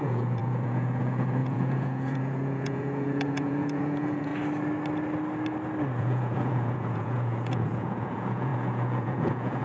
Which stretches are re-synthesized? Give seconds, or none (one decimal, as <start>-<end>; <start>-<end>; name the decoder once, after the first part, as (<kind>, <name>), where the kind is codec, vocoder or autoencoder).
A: 0.0-4.3 (vocoder, Vocos); 6.0-9.6